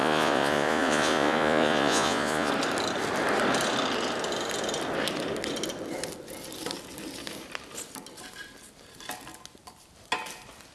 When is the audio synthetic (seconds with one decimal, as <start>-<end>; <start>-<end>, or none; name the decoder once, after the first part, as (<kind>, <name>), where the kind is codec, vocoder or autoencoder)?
0.0-2.5 (vocoder, Vocos)